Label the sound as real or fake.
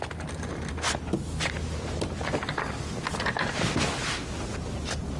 real